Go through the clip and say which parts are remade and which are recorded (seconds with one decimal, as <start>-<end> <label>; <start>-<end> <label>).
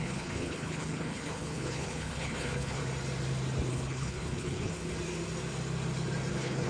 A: 0.0-2.8 remade; 2.8-3.7 recorded; 3.7-4.8 remade; 4.8-6.3 recorded; 6.3-6.7 remade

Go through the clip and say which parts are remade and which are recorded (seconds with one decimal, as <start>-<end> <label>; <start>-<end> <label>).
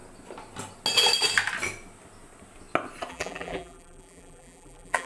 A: 0.0-3.1 recorded; 3.1-5.1 remade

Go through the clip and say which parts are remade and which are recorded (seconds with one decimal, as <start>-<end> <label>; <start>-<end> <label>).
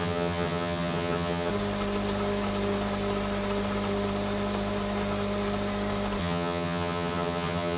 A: 0.0-1.5 remade; 1.5-6.2 recorded; 6.2-7.8 remade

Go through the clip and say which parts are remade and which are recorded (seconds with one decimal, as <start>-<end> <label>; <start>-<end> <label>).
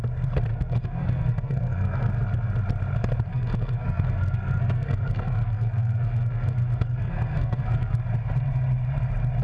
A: 0.0-0.5 recorded; 0.5-2.1 remade; 2.1-3.3 recorded; 3.3-8.0 remade; 8.0-9.4 recorded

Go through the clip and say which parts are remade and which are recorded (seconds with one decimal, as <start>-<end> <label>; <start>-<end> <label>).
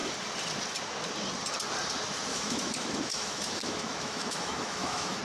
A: 0.0-2.3 recorded; 2.3-5.2 remade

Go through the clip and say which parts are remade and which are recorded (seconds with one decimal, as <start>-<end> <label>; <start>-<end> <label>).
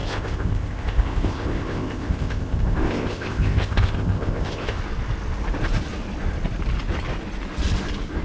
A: 0.0-4.8 remade; 4.8-8.2 recorded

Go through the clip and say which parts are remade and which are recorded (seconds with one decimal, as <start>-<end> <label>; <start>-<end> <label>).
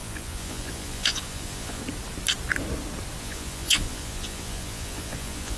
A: 0.0-1.8 remade; 1.8-3.2 recorded; 3.2-5.6 remade